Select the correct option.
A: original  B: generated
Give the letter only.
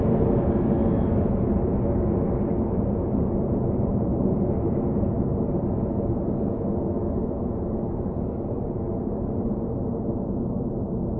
A